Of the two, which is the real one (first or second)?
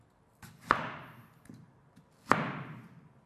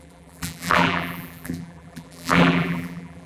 first